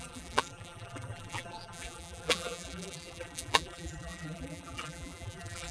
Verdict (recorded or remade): remade